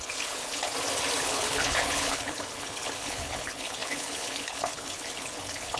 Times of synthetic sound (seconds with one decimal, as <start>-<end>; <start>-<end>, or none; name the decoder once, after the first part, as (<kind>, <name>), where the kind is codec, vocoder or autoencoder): 0.0-0.7 (codec, HILCodec); 1.2-5.8